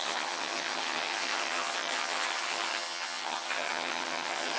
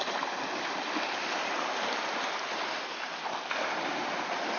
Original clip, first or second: second